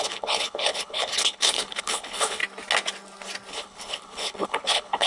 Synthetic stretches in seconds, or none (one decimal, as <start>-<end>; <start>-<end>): 0.0-2.4; 3.5-5.1